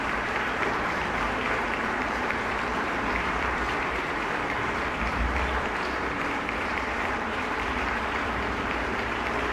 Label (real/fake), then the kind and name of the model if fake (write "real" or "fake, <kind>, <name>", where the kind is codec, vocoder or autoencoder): fake, vocoder, BigVGAN v2